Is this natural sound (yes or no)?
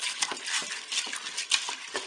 yes